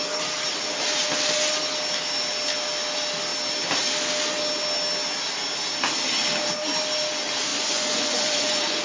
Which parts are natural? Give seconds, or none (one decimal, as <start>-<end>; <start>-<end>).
0.0-7.5